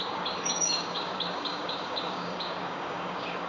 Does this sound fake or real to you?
fake